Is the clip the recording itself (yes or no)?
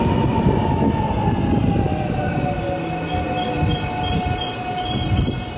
yes